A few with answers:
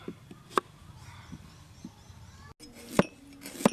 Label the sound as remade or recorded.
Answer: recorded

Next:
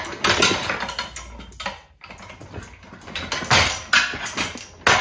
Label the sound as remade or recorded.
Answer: recorded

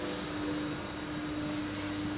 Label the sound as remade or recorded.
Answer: recorded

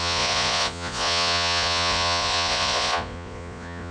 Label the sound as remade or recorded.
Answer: remade